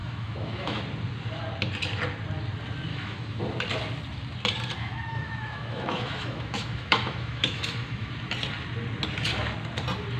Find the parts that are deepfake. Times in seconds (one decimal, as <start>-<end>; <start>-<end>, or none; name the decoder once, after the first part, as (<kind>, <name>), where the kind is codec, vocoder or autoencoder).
0.0-0.8 (autoencoder, DAC-VAE); 2.9-3.4; 4.8-8.1